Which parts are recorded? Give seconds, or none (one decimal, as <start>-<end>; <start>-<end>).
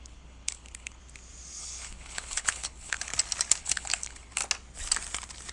1.0-1.6; 3.1-3.6; 4.4-5.5